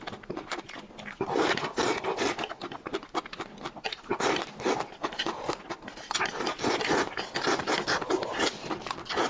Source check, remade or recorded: recorded